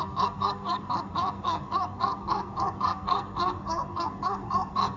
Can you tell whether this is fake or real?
fake